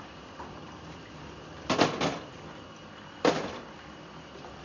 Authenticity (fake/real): fake